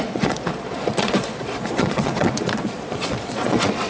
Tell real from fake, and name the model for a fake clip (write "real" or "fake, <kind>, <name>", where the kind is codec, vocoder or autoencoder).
fake, vocoder, Vocos